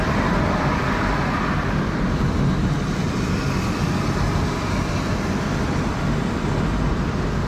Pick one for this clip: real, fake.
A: real